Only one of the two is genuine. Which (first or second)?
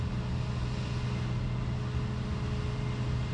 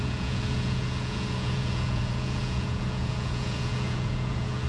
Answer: first